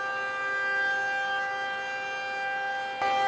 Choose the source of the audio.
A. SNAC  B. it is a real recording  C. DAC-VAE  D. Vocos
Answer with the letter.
B